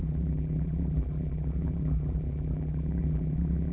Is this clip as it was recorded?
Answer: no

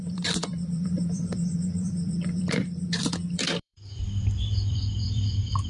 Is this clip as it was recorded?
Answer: no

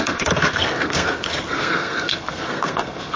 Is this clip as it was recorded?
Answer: no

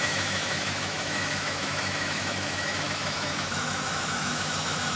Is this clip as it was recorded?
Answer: no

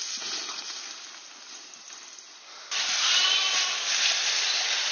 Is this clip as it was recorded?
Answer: yes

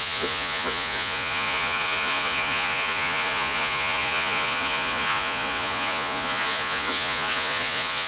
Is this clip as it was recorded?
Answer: no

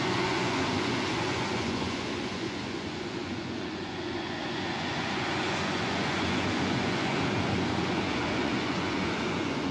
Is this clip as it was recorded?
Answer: no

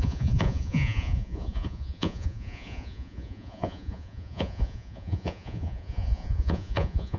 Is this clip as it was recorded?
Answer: no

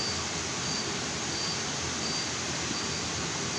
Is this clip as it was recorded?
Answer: yes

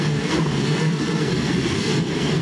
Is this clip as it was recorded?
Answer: no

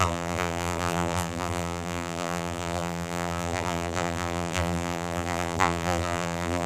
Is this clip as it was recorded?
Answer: no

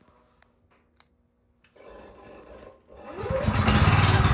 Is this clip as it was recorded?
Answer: yes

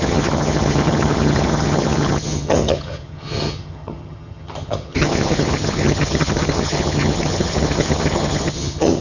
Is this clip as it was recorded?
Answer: no